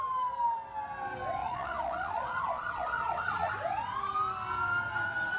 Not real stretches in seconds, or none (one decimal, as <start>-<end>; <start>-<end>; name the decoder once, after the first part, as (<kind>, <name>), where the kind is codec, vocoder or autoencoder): 1.4-3.5 (vocoder, Vocos)